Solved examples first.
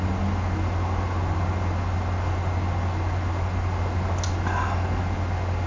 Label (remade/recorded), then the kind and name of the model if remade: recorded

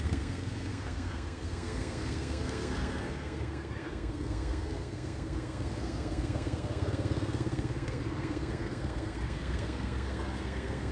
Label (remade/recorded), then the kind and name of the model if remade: remade, codec, SNAC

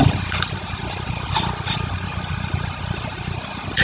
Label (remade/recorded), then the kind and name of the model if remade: recorded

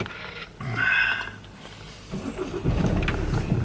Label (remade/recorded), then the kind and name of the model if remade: recorded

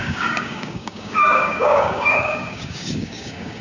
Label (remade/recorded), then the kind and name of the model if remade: remade, codec, DAC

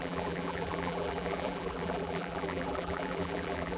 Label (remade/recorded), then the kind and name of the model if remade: remade, vocoder, BigVGAN v2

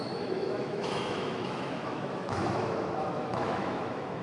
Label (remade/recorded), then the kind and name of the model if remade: remade, autoencoder, DAC-VAE